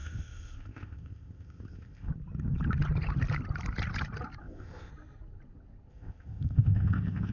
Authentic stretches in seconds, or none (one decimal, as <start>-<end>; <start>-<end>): 2.1-4.4; 4.9-5.9